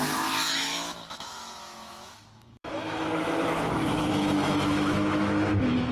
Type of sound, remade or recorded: remade